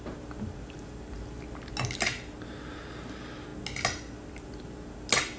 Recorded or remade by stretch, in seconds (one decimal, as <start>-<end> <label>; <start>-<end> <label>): 0.0-5.4 recorded